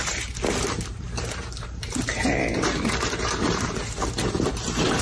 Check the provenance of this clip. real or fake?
fake